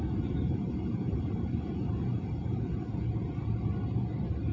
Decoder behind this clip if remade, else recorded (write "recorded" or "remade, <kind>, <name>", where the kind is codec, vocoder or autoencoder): remade, vocoder, BigVGAN v2